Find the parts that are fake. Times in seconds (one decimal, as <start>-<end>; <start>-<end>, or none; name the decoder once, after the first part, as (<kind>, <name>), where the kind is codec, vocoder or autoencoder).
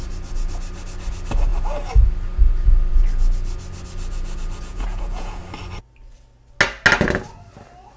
4.7-5.4 (vocoder, Vocos)